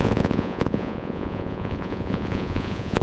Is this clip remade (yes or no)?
yes